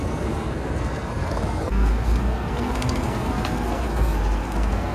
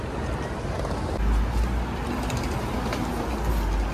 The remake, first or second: first